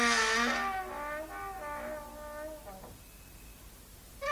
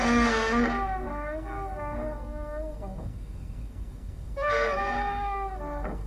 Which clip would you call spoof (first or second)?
second